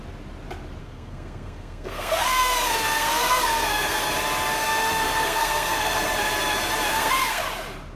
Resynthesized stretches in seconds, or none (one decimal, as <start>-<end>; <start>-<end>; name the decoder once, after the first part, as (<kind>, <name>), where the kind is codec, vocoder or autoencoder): 0.8-4.1 (codec, SNAC); 4.6-6.0; 6.9-7.4